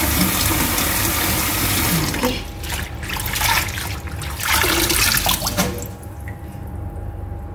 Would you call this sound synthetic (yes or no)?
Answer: no